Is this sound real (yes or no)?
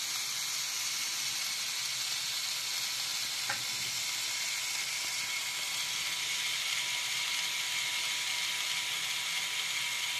yes